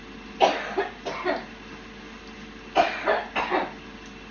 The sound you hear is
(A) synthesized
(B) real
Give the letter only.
B